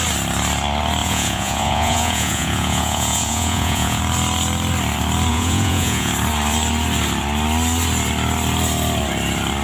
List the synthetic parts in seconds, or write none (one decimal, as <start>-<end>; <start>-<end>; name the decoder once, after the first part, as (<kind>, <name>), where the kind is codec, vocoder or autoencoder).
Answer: 1.0-4.0 (vocoder, Vocos); 5.3-6.1